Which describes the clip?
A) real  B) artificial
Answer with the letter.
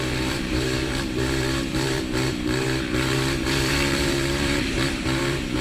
B